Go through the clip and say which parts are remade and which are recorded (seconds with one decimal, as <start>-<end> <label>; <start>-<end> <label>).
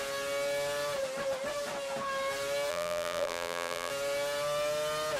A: 0.0-2.7 recorded; 2.7-3.9 remade; 3.9-5.2 recorded